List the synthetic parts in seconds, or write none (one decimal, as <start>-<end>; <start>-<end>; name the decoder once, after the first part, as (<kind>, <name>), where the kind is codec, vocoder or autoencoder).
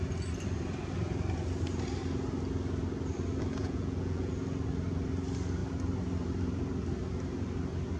3.6-4.3 (vocoder, Vocos)